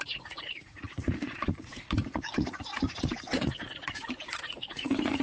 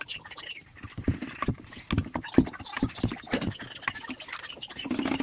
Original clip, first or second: second